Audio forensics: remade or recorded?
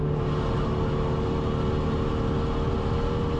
recorded